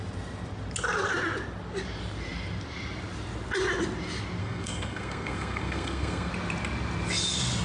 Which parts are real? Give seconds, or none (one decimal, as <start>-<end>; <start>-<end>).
0.0-4.4; 6.3-7.6